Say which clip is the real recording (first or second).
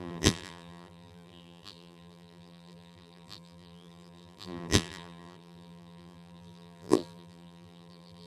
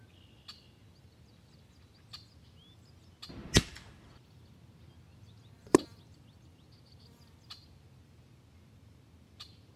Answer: second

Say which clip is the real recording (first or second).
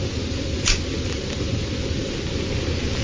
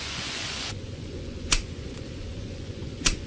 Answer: first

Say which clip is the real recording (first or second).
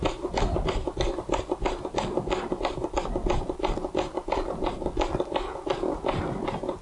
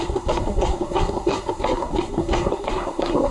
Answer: first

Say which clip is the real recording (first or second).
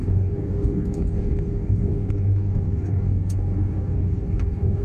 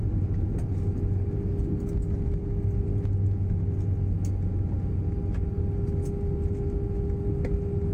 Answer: second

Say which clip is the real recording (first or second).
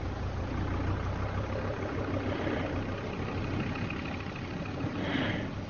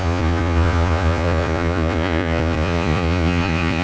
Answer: first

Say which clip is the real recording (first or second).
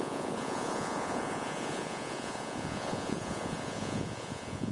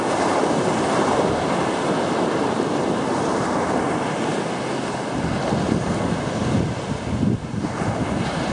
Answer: second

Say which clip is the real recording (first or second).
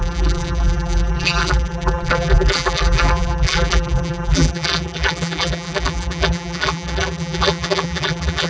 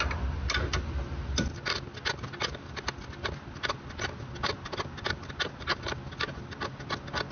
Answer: second